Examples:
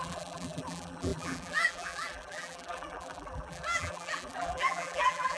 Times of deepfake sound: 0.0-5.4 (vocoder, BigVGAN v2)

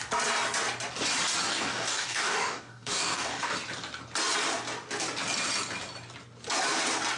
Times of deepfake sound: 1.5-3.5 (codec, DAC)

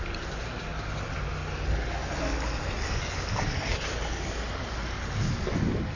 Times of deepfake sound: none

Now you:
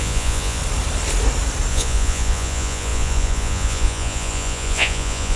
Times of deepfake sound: 0.0-0.6 (vocoder, Vocos); 1.7-5.4

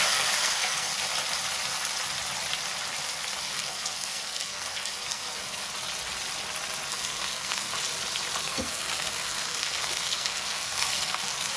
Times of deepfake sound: 0.0-0.9 (codec, SNAC); 3.4-5.7; 6.9-7.7; 8.4-11.6

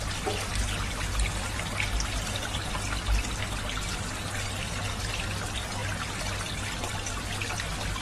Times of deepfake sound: none

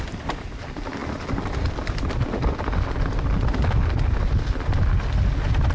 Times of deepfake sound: none